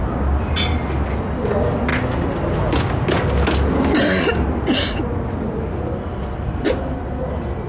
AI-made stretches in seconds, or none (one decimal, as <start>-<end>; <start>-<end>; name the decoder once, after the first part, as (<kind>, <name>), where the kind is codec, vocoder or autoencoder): none